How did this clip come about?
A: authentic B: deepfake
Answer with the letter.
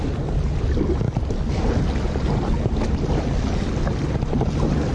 A